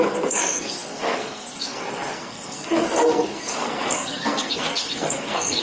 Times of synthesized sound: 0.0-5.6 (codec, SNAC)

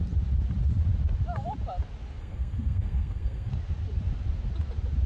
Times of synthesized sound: 2.2-3.5 (codec, SNAC)